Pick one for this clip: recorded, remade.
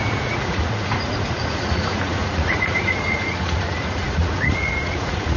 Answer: remade